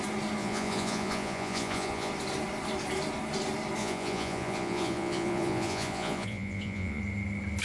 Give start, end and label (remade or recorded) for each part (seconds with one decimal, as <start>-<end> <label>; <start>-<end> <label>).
0.0-0.4 recorded; 0.4-2.1 remade; 2.1-3.8 recorded; 3.8-7.0 remade; 7.0-7.6 recorded